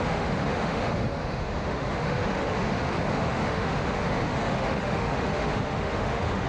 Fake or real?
fake